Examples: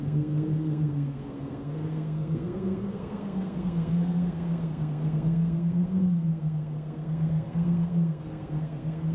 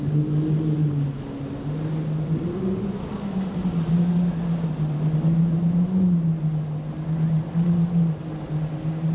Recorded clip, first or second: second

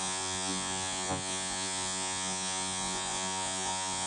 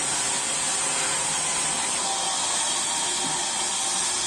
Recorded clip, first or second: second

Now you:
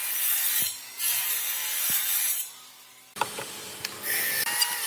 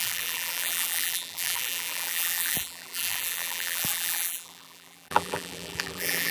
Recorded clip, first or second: first